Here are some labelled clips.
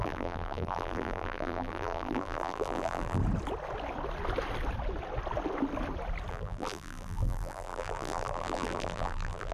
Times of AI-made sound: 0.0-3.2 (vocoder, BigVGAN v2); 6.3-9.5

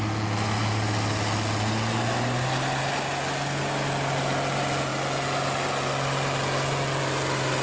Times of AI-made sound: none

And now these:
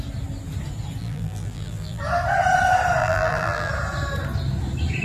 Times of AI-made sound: 1.0-2.0 (vocoder, BigVGAN v2); 3.0-3.7